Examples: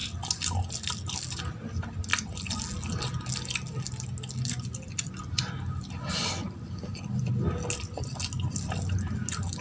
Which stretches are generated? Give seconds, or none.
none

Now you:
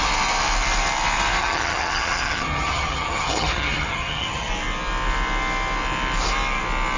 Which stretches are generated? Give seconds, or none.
1.4-4.5 (vocoder, HiFi-GAN)

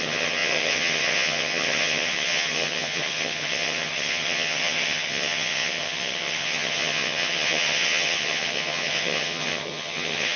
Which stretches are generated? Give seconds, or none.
0.0-10.4 (vocoder, HiFi-GAN)

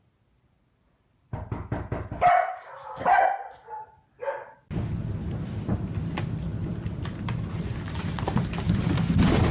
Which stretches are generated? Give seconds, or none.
none